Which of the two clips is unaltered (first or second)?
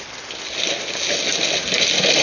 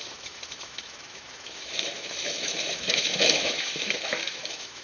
first